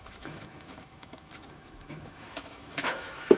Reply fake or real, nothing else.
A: fake